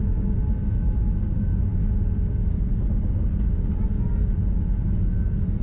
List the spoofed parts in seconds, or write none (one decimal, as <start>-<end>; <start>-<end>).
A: 0.6-1.2